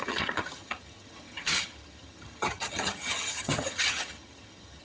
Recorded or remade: remade